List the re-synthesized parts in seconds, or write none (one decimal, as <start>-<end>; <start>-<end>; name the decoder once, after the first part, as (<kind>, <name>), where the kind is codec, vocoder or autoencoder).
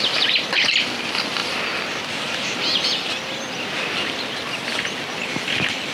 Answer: none